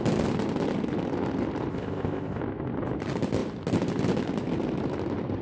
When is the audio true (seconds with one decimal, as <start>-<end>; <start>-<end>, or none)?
0.0-1.7; 2.4-5.4